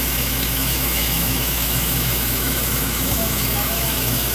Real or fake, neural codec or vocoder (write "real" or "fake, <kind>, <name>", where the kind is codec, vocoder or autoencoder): fake, autoencoder, DAC-VAE